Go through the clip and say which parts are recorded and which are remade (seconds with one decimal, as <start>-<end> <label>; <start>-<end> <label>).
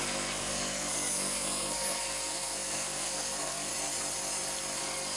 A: 0.0-3.7 remade; 3.7-4.8 recorded; 4.8-5.2 remade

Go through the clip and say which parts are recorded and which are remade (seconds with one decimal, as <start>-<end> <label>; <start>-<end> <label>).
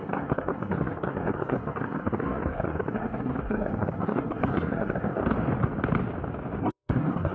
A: 0.0-5.2 remade; 5.2-6.6 recorded; 6.6-7.3 remade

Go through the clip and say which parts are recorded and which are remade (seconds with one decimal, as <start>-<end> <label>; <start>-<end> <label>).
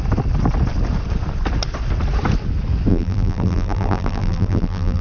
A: 0.0-2.9 recorded; 2.9-5.0 remade